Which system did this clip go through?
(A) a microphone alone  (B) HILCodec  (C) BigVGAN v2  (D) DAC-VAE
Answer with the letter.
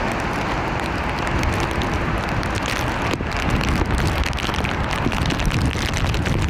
A